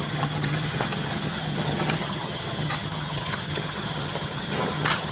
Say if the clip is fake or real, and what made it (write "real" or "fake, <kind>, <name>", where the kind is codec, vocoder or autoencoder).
fake, vocoder, HiFi-GAN